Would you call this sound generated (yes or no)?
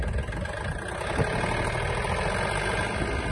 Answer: no